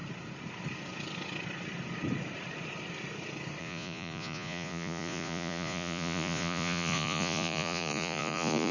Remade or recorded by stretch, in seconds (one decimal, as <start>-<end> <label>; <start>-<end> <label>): 0.0-3.6 recorded; 3.6-8.7 remade